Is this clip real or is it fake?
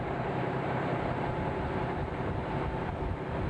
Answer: fake